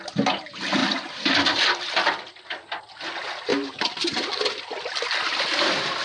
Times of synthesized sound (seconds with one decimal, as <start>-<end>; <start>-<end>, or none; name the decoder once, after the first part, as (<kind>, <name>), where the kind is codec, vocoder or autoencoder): 0.8-2.8 (vocoder, BigVGAN v2); 3.5-4.4